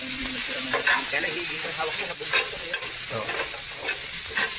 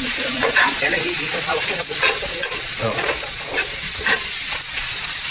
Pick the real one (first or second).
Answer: first